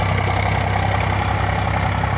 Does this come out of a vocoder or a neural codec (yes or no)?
no